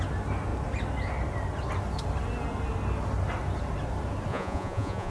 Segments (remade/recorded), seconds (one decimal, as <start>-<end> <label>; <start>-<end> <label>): 0.0-4.3 recorded; 4.3-5.1 remade